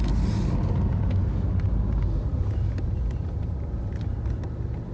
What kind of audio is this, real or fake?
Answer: real